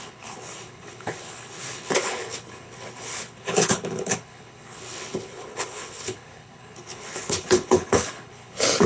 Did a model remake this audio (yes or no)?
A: yes